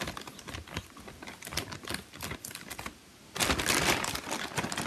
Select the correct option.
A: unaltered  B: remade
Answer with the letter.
A